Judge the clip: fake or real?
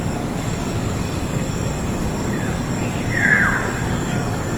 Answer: fake